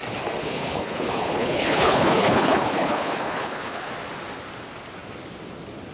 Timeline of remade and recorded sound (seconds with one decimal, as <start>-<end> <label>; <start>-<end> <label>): 0.0-0.4 recorded; 0.4-3.9 remade; 3.9-5.9 recorded